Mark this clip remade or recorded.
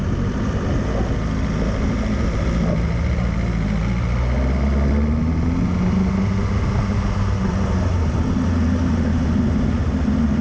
recorded